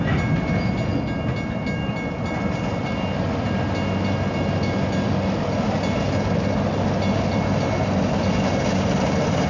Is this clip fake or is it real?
real